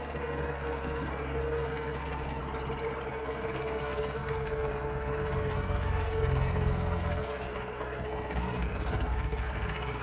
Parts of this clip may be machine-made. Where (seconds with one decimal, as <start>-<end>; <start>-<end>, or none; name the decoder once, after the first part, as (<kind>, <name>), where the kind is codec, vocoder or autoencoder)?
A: 0.0-2.4 (codec, SNAC); 3.1-10.0